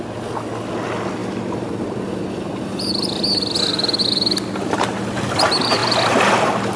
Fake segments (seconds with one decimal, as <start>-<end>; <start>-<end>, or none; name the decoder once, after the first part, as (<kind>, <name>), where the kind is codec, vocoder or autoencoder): 1.2-3.2 (vocoder, BigVGAN v2)